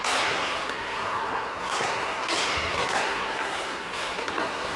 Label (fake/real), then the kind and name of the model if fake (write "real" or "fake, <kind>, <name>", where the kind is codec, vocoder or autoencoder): fake, codec, SNAC